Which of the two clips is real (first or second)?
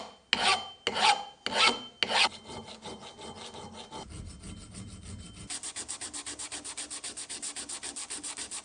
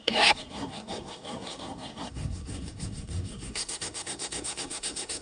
first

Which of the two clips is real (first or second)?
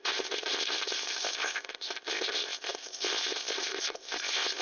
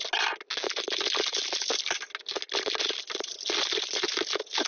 second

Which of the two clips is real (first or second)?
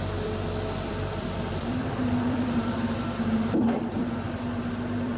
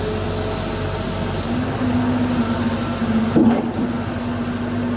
second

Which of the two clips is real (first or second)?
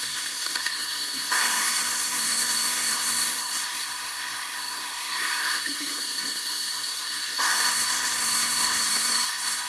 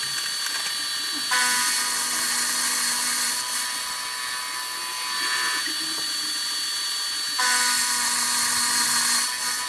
second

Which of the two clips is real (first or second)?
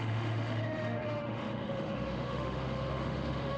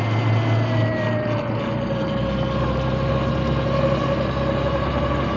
second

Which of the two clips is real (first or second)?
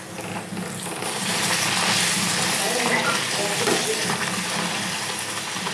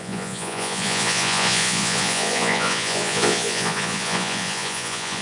first